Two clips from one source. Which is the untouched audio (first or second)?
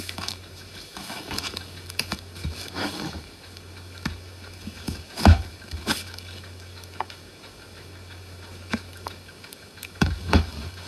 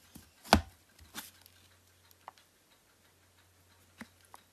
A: second